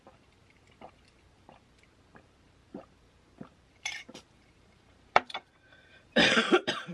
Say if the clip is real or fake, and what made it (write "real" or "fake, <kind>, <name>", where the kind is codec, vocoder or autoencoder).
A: fake, vocoder, BigVGAN v2